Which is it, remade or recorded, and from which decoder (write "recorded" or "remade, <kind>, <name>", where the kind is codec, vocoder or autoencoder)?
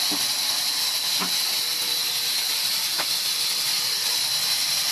recorded